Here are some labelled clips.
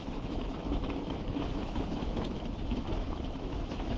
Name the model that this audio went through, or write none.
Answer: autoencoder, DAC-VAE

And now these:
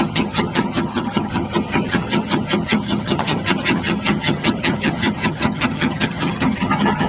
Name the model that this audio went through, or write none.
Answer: vocoder, HiFi-GAN